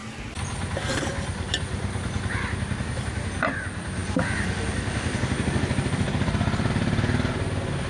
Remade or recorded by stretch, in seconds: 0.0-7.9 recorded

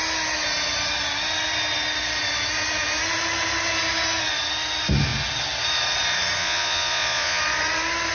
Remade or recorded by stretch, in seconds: 0.0-6.4 recorded; 6.4-7.4 remade; 7.4-8.1 recorded